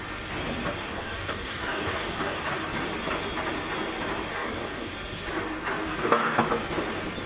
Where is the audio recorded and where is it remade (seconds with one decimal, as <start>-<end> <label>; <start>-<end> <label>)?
0.0-0.8 recorded; 0.8-2.4 remade; 2.4-4.3 recorded; 4.3-4.9 remade; 4.9-5.8 recorded; 5.8-6.4 remade; 6.4-7.3 recorded